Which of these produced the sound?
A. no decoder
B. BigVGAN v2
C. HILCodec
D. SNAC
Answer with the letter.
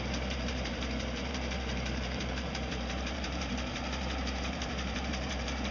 B